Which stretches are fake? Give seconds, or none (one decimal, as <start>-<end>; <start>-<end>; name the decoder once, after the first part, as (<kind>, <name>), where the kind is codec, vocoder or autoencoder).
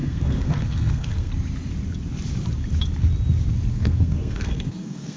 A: 0.0-1.3 (codec, SNAC); 3.7-5.2